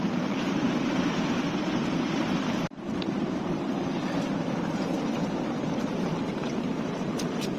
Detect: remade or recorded remade